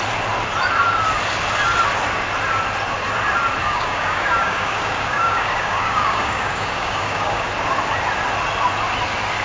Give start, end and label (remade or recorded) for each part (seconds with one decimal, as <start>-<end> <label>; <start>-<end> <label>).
0.0-3.6 recorded; 3.6-7.5 remade; 7.5-9.4 recorded

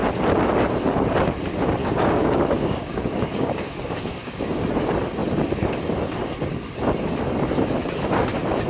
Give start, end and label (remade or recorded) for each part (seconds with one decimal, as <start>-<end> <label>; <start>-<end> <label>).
0.0-1.8 recorded; 1.8-4.4 remade; 4.4-8.7 recorded

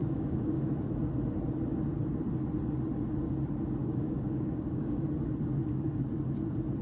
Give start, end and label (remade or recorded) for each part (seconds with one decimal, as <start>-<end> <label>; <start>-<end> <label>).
0.0-0.7 remade; 0.7-3.8 recorded; 3.8-5.0 remade; 5.0-6.8 recorded

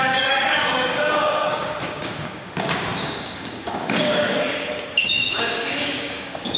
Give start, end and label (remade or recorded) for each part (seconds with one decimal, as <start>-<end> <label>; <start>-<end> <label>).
0.0-6.6 remade

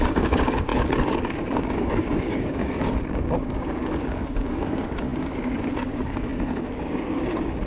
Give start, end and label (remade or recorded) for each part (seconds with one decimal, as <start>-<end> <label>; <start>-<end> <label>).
0.0-7.7 remade